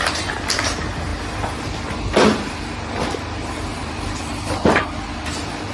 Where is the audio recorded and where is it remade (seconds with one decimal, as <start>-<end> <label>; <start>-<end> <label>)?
0.0-3.7 recorded; 3.7-4.2 remade; 4.2-5.7 recorded